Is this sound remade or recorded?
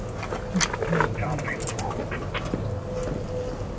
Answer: recorded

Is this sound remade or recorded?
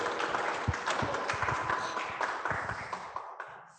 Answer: recorded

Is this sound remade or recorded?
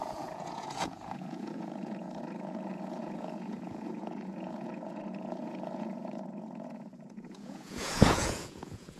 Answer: remade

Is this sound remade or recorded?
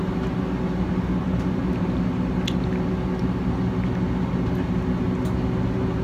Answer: recorded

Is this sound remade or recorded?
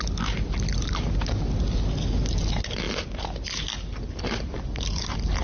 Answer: recorded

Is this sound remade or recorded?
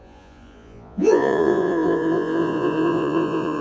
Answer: remade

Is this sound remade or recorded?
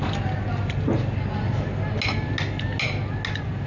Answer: recorded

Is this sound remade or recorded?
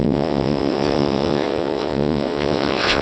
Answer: remade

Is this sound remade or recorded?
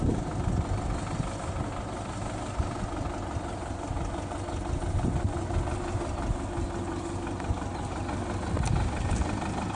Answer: recorded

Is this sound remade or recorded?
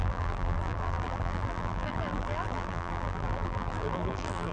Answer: remade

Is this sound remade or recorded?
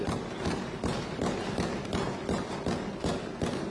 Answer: recorded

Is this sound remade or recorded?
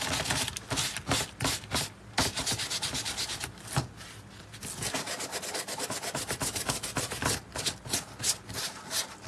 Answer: recorded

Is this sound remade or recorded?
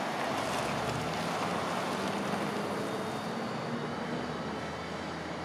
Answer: recorded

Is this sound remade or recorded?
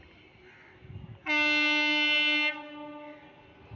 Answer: recorded